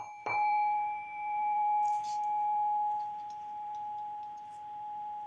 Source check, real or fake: fake